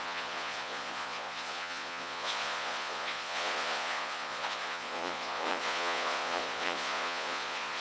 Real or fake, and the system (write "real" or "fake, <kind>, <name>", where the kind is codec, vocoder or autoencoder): fake, vocoder, Vocos